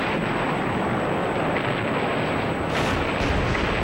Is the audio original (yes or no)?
no